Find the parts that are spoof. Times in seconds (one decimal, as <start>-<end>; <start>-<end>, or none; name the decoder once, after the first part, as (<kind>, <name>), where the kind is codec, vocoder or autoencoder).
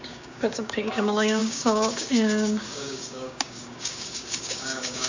0.0-5.1 (codec, DAC)